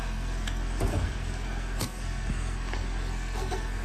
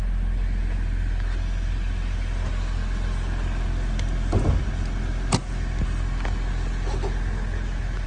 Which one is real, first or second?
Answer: second